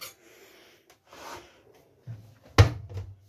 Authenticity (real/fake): real